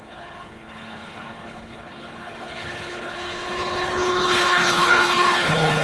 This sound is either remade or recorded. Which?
remade